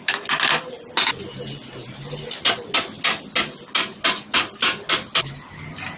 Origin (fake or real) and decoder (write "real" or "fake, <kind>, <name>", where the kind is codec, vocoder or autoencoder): real